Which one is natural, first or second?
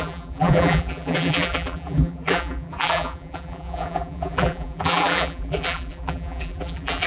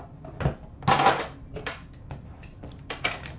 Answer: second